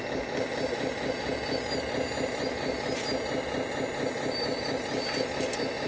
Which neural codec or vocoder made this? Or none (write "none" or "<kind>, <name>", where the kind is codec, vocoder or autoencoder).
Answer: none